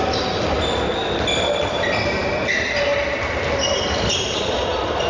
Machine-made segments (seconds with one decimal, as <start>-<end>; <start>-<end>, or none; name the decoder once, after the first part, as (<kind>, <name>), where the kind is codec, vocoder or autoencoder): none